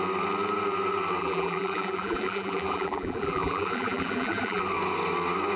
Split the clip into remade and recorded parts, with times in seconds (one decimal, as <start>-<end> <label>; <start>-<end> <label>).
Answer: 0.0-1.2 recorded; 1.2-4.6 remade; 4.6-5.6 recorded